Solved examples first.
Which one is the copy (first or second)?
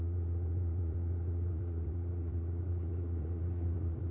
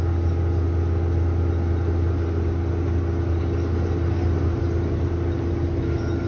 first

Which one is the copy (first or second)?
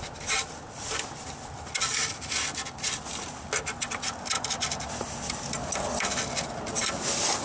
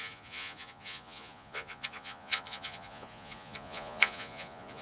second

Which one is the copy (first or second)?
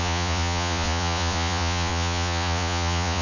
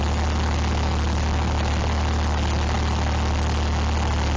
first